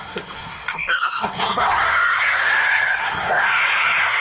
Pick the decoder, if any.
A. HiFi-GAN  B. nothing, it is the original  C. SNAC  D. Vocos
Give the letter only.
C